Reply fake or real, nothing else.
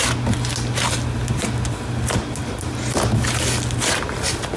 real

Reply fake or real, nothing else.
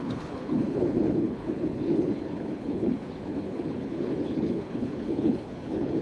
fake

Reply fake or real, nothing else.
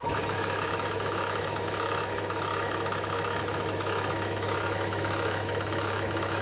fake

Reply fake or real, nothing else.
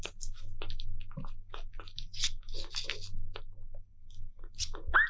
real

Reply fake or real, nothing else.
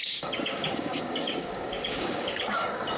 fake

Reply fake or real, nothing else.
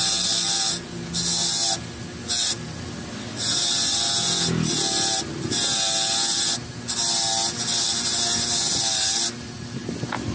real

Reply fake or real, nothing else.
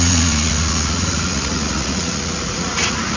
fake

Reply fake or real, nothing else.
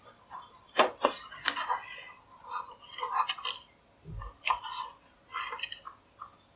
real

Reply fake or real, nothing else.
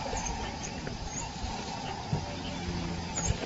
real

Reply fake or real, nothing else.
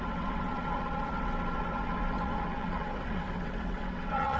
fake